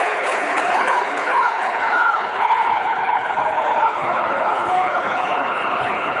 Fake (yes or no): yes